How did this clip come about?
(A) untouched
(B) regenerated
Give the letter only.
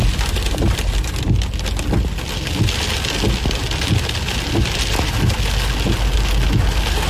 A